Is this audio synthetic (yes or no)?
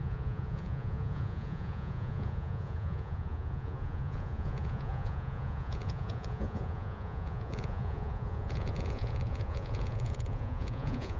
yes